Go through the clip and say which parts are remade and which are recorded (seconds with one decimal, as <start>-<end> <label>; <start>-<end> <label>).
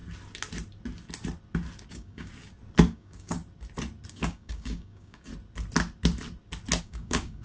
0.0-1.9 recorded; 1.9-2.3 remade; 2.3-2.9 recorded; 2.9-3.4 remade; 3.4-4.1 recorded; 4.1-5.3 remade; 5.3-6.8 recorded; 6.8-7.4 remade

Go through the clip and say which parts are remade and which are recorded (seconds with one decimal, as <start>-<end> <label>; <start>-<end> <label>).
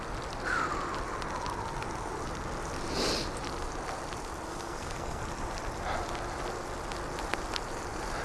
0.0-4.5 recorded; 4.5-5.2 remade; 5.2-8.2 recorded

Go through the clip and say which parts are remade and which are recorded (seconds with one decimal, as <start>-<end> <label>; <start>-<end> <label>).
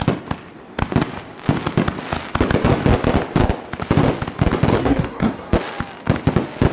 0.0-4.8 recorded; 4.8-5.5 remade; 5.5-6.7 recorded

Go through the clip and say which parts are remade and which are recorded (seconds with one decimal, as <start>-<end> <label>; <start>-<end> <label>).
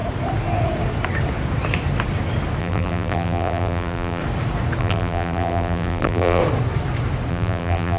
0.0-2.6 recorded; 2.6-4.2 remade; 4.2-4.8 recorded; 4.8-6.4 remade; 6.4-7.3 recorded; 7.3-8.0 remade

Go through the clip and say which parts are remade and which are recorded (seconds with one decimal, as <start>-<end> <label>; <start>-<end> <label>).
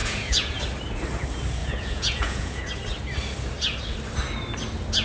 0.0-0.6 remade; 0.6-1.6 recorded; 1.6-2.6 remade; 2.6-5.0 recorded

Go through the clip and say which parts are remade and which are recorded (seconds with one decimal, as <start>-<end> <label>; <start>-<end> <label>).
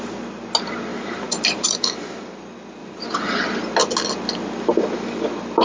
0.0-0.9 recorded; 0.9-2.4 remade; 2.4-2.8 recorded; 2.8-3.3 remade; 3.3-5.6 recorded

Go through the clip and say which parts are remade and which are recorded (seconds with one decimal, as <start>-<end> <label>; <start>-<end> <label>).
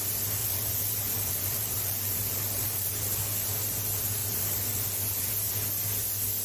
0.0-0.4 recorded; 0.4-2.9 remade; 2.9-4.2 recorded; 4.2-5.3 remade; 5.3-6.4 recorded